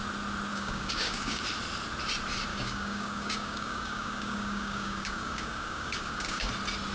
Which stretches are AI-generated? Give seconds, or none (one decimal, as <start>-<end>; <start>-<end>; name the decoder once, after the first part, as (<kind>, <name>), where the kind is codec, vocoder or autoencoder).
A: 0.5-1.4 (codec, DAC); 2.5-6.5